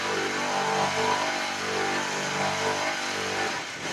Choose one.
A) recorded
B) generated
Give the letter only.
B